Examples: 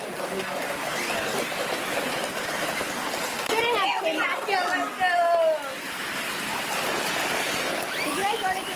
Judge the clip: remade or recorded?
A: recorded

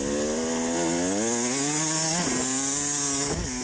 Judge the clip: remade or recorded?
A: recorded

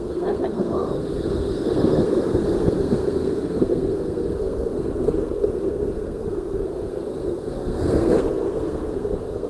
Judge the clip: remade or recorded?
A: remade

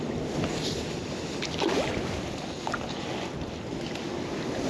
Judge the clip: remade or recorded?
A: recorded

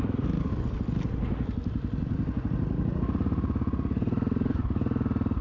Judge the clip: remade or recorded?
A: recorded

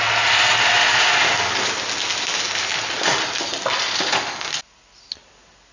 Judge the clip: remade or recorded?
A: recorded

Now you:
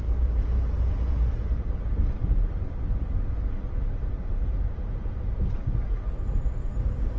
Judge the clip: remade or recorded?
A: remade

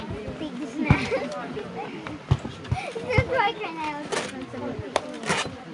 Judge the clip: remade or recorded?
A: recorded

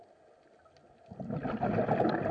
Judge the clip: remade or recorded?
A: recorded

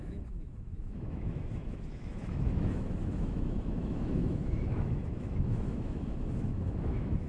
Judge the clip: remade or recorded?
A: remade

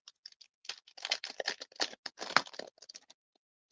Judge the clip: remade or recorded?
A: recorded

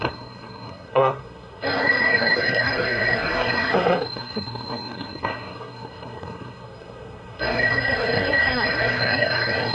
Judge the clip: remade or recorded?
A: remade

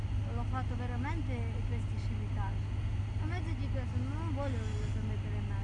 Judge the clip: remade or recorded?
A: recorded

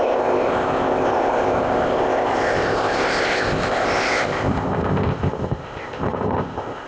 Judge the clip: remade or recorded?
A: remade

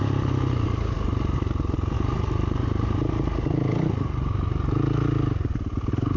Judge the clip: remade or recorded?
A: recorded